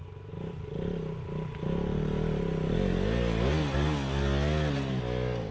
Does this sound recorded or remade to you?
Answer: recorded